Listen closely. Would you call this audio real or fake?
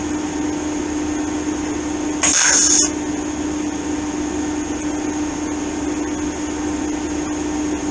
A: real